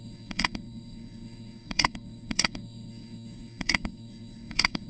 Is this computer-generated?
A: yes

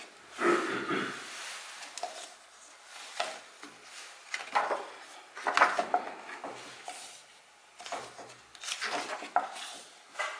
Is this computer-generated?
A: no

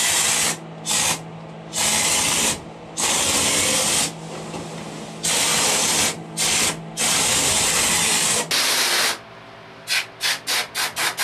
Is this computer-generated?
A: no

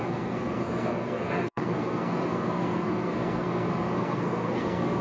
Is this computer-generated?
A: yes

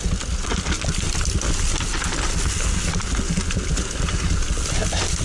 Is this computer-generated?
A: no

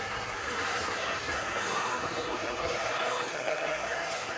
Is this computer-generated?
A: yes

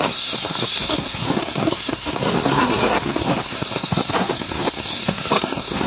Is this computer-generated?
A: yes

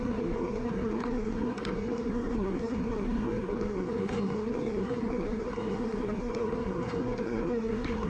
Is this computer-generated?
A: yes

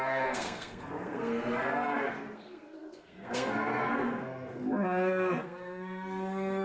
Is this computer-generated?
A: yes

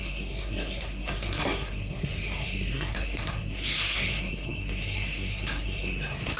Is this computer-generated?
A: yes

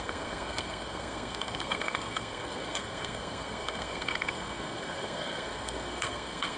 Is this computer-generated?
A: yes